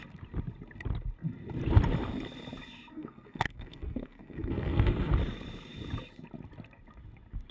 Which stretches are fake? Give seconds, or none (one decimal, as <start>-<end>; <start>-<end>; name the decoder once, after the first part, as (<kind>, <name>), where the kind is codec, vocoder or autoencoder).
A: 2.9-5.1 (codec, SNAC)